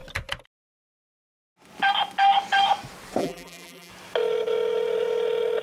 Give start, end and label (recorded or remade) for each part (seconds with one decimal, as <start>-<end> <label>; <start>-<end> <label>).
0.0-3.2 recorded; 3.2-3.9 remade; 3.9-5.6 recorded